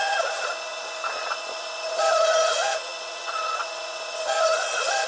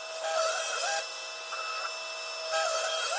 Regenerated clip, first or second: first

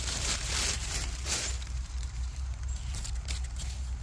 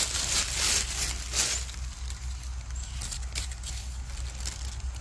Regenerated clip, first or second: first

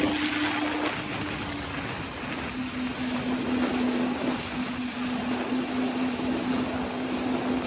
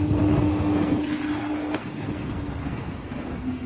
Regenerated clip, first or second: second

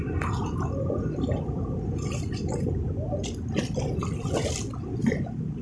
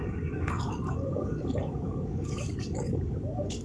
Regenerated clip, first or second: second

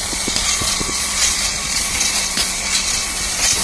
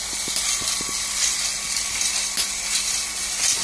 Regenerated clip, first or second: first